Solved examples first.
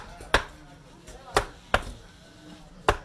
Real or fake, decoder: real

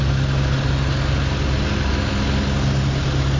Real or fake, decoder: real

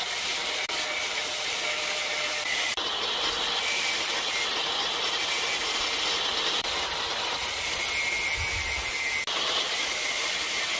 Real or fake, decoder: real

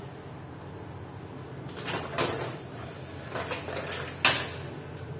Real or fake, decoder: real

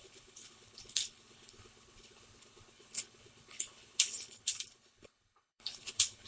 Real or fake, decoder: fake, codec, HILCodec